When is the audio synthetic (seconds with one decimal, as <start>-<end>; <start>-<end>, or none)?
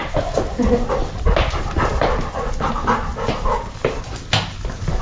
none